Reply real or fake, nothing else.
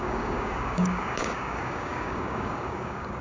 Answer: fake